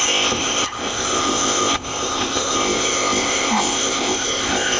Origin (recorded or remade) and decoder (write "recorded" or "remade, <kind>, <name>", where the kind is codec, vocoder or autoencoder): remade, codec, ZipCodec